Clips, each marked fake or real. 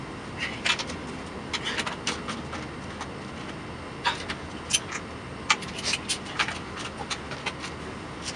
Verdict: real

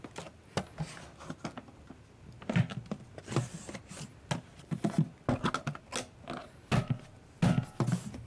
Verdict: real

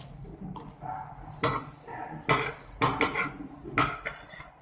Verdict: real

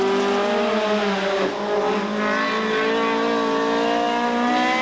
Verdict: real